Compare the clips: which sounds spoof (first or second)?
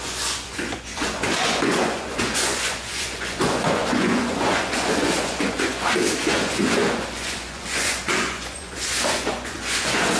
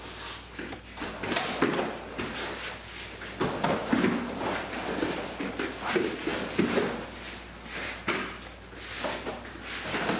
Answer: first